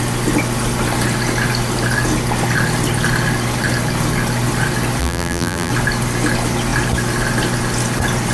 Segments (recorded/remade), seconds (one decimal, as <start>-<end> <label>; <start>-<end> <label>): 0.0-5.0 recorded; 5.0-5.7 remade; 5.7-8.3 recorded